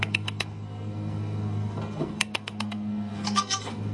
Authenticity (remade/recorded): remade